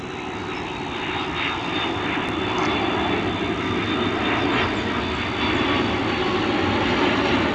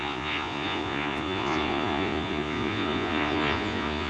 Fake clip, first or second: second